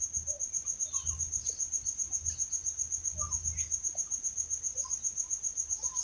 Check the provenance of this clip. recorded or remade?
recorded